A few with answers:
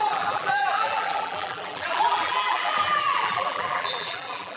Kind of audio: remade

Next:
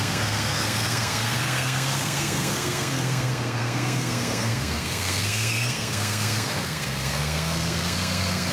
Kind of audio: remade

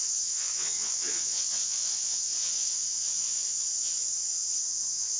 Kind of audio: remade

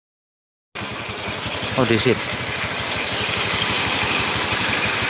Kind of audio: recorded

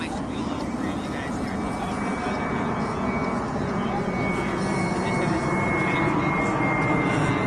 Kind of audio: recorded